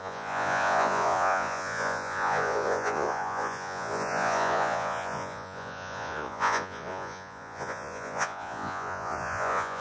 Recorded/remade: remade